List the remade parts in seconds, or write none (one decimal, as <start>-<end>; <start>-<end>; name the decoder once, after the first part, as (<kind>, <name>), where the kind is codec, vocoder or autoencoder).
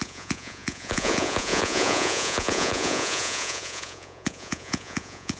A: 0.0-5.4 (vocoder, Vocos)